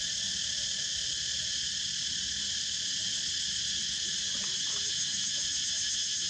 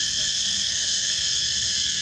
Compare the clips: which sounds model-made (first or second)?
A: second